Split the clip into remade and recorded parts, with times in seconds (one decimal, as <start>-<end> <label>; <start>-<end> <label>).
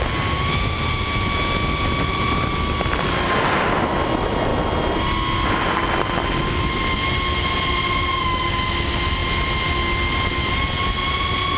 0.0-11.6 recorded